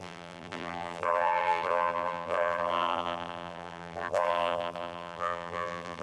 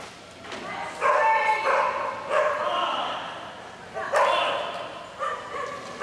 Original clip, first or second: second